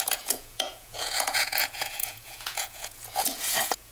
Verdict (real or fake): fake